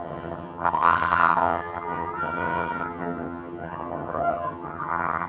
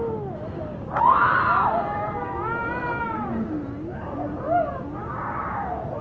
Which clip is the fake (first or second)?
first